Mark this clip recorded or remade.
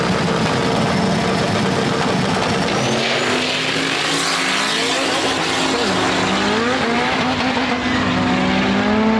recorded